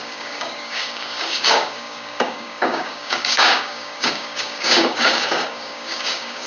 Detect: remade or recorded remade